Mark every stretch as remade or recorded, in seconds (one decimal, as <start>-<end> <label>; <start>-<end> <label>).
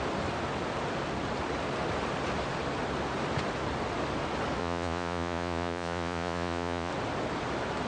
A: 0.0-4.6 recorded; 4.6-6.9 remade; 6.9-7.9 recorded